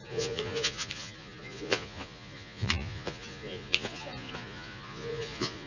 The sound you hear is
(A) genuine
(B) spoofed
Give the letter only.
B